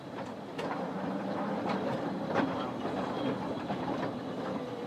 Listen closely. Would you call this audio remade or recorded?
remade